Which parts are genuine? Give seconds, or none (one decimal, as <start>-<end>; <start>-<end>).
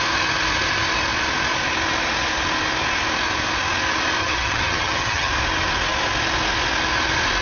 0.0-4.2; 5.3-7.4